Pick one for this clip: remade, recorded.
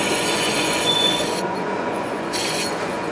remade